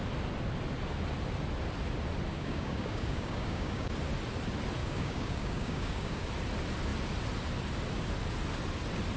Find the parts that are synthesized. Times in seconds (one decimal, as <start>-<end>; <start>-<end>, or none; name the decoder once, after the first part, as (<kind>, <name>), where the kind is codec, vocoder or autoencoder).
2.3-3.9 (codec, DAC); 4.8-6.2